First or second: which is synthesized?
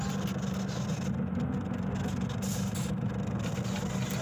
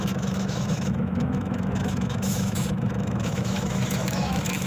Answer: second